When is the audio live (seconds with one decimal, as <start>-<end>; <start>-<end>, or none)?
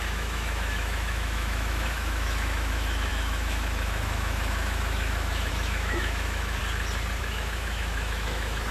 6.6-7.2